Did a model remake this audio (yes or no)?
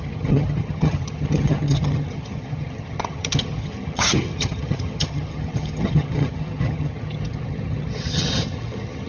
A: yes